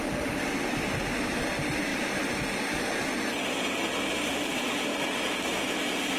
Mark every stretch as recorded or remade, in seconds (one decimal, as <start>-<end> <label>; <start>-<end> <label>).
0.0-4.9 remade; 4.9-5.4 recorded; 5.4-6.2 remade